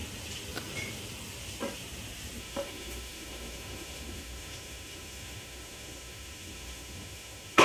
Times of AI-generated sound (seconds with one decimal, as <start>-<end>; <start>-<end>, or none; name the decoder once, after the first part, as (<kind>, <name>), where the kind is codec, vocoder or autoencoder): 2.4-7.6 (autoencoder, DAC-VAE)